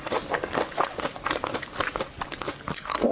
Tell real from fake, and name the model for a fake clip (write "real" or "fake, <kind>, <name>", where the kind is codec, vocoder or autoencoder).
real